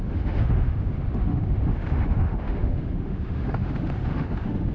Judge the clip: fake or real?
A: fake